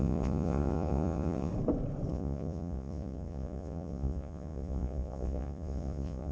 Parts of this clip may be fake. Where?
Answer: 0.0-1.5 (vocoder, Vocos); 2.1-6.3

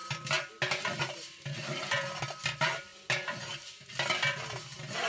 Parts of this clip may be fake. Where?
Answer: none

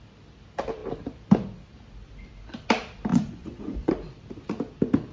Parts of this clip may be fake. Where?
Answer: 3.1-3.9 (vocoder, Vocos)

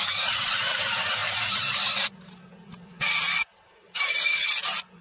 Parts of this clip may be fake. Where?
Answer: none

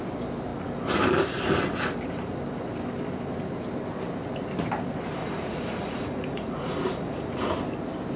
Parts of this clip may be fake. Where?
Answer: 5.2-7.5 (vocoder, Vocos)

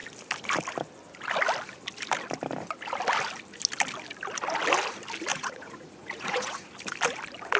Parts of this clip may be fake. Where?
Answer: 5.3-6.7 (vocoder, Vocos)

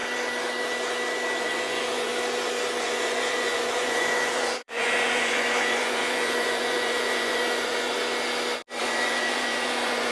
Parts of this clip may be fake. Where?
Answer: 1.4-2.1 (vocoder, Vocos); 2.8-7.9; 8.8-10.1

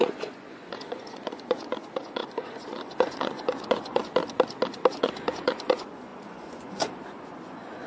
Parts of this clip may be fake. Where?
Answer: 0.0-4.0 (vocoder, Vocos); 4.9-7.9